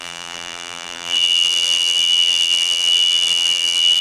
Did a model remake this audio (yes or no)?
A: yes